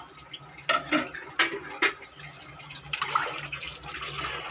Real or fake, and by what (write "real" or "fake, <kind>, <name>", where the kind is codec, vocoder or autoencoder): real